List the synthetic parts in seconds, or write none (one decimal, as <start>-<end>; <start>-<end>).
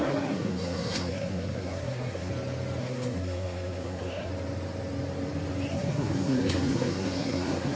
0.0-2.3; 2.8-4.3; 5.7-7.8